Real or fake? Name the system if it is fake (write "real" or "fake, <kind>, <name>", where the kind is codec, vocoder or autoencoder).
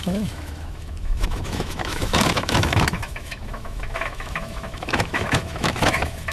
fake, autoencoder, DAC-VAE